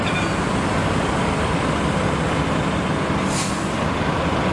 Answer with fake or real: real